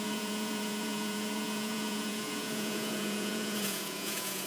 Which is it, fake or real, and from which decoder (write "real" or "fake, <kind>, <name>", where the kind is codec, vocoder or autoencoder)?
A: fake, vocoder, Vocos